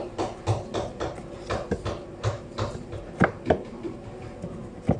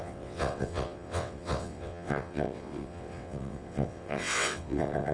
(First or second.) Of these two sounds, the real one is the first